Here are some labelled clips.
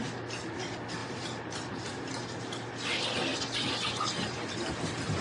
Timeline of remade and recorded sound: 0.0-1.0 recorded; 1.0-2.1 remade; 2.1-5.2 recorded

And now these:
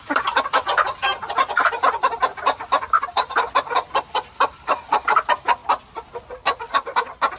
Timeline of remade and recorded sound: 0.0-1.0 remade; 1.0-2.1 recorded; 2.1-5.6 remade; 5.6-6.2 recorded; 6.2-7.4 remade

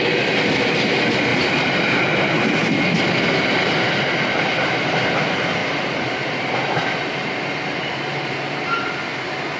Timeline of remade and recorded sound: 0.0-1.3 recorded; 1.3-2.0 remade; 2.0-9.6 recorded

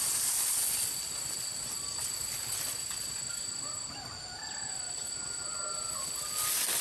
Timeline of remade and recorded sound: 0.0-6.8 recorded

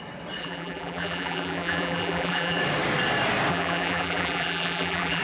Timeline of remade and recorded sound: 0.0-0.4 recorded; 0.4-2.6 remade; 2.6-3.5 recorded; 3.5-5.2 remade

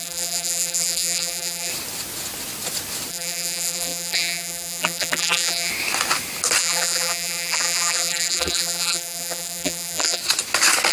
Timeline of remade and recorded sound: 0.0-1.7 remade; 1.7-3.1 recorded; 3.1-5.7 remade; 5.7-6.6 recorded; 6.6-10.2 remade; 10.2-10.9 recorded

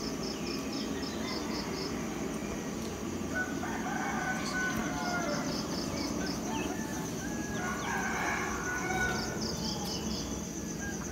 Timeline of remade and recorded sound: 0.0-6.9 recorded; 6.9-7.5 remade; 7.5-11.1 recorded